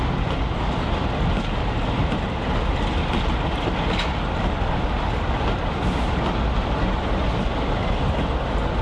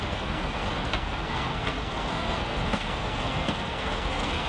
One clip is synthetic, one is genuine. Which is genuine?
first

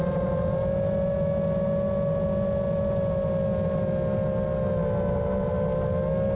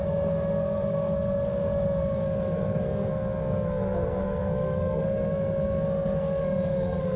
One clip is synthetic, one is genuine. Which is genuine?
first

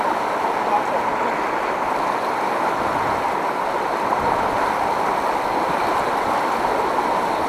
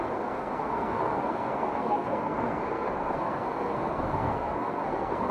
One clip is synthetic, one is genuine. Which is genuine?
first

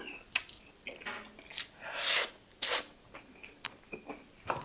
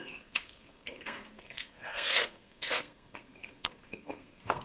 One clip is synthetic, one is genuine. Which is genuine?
first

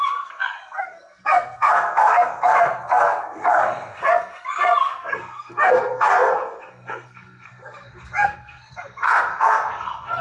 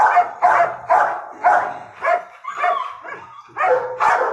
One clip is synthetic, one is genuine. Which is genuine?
second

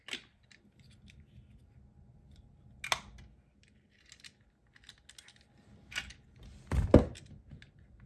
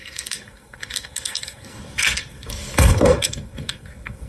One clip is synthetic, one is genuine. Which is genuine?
first